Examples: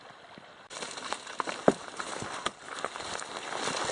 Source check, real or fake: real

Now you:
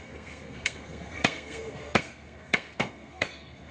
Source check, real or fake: fake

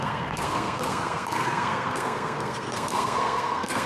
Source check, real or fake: fake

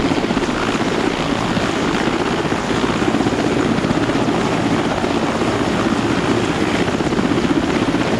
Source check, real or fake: real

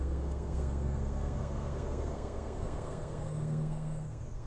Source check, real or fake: fake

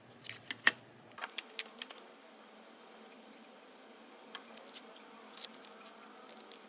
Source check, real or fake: real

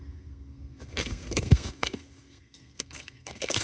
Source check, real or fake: fake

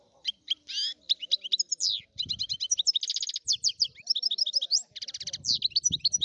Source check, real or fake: real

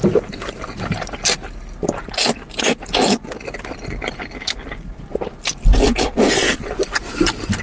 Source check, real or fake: real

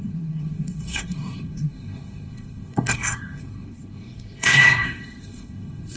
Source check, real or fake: fake